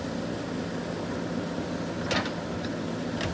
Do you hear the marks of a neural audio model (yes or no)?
no